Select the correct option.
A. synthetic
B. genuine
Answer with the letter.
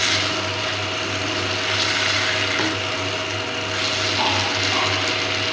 B